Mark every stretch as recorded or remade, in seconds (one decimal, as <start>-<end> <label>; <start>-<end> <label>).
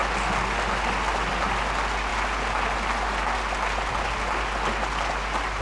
0.0-5.6 recorded